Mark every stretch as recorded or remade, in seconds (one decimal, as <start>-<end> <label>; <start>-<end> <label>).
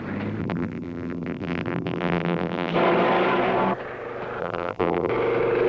0.0-0.4 recorded; 0.4-2.7 remade; 2.7-4.4 recorded; 4.4-5.1 remade; 5.1-5.7 recorded